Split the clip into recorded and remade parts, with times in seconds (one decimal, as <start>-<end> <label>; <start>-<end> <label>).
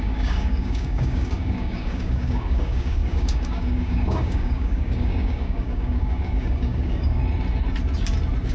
0.0-7.2 remade; 7.2-8.5 recorded